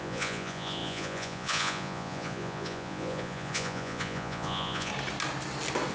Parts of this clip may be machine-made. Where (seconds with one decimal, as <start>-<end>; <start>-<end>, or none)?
0.0-4.9